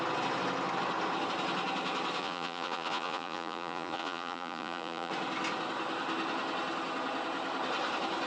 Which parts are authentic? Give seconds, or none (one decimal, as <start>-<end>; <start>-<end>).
0.0-2.2; 5.1-8.3